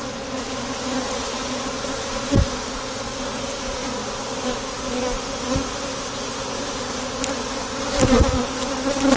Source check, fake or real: real